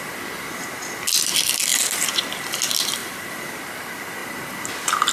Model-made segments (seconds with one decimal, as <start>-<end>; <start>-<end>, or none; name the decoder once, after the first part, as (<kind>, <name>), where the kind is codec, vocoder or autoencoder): 1.7-2.2 (vocoder, BigVGAN v2); 3.0-3.7; 4.2-5.1